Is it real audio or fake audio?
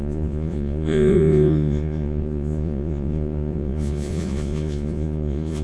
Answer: fake